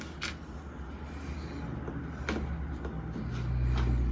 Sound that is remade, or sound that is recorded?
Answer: recorded